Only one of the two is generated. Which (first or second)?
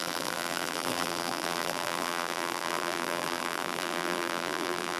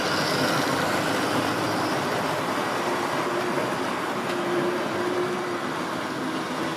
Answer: first